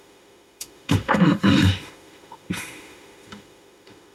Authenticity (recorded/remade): remade